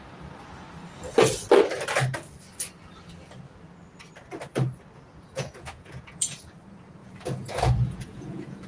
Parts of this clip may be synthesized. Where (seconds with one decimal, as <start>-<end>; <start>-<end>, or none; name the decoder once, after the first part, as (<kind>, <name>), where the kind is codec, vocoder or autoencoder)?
4.9-6.4 (vocoder, Vocos); 7.0-8.7